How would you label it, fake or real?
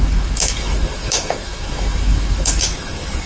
fake